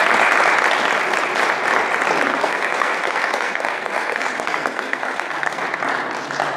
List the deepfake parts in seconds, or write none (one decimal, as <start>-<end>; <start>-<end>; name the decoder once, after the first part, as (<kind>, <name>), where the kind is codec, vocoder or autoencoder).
2.3-5.6 (codec, SNAC)

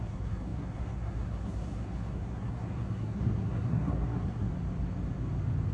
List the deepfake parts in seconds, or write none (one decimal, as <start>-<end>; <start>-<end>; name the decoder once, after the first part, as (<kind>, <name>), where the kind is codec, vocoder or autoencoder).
0.0-4.5 (codec, SNAC)

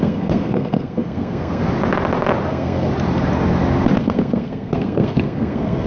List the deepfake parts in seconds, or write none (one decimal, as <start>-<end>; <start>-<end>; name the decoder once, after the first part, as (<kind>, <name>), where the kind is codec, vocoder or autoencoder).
0.0-1.6 (codec, SNAC); 2.5-2.9; 4.0-5.9

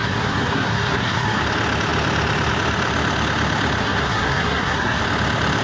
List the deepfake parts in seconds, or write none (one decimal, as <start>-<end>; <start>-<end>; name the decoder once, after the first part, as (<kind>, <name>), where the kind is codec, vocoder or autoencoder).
0.0-1.4 (codec, SNAC); 3.8-5.0

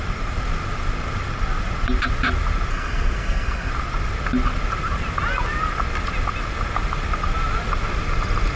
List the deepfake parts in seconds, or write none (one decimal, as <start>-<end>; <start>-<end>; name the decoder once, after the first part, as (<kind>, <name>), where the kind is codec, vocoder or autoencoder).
2.7-3.7 (codec, SNAC)